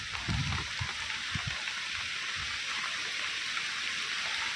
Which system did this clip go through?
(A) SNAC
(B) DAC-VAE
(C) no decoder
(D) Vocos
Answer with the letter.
C